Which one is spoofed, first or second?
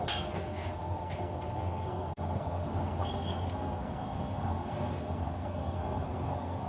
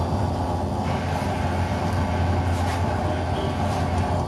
first